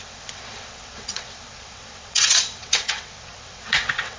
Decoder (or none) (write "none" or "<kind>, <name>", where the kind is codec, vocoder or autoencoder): vocoder, WaveNeXt